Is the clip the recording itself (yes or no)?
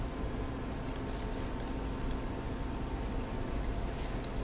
yes